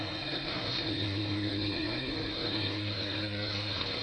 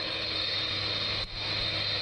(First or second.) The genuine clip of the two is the second